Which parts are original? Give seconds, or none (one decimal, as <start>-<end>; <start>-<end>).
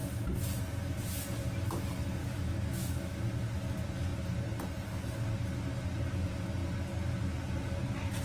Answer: 0.0-2.2; 3.2-8.2